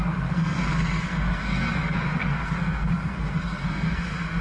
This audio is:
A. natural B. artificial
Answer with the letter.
B